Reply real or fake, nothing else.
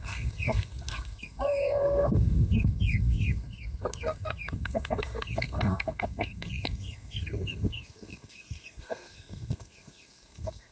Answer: fake